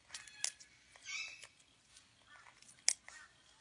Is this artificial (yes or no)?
no